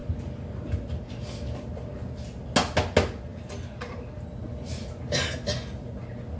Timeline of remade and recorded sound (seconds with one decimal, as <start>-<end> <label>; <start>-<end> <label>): 0.0-6.4 recorded